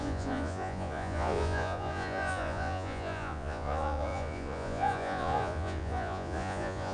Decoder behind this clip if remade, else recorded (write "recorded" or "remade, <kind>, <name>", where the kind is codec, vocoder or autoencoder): remade, vocoder, Vocos